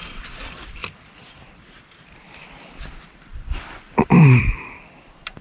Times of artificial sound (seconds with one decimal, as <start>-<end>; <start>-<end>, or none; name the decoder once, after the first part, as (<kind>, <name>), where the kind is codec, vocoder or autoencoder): 0.0-5.4 (vocoder, BigVGAN v2)

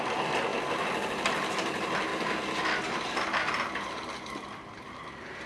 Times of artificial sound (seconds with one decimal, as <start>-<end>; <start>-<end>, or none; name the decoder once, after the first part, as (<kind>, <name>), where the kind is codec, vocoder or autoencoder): none

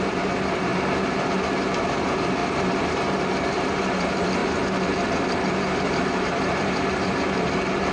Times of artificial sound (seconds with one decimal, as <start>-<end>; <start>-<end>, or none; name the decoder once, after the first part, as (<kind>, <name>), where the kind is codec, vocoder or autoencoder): 0.0-7.9 (vocoder, BigVGAN v2)